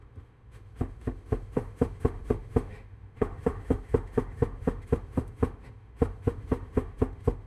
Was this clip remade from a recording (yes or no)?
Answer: yes